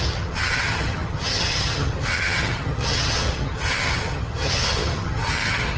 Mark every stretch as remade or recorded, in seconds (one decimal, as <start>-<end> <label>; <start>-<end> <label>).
0.0-5.8 remade